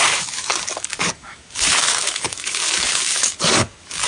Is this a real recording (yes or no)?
no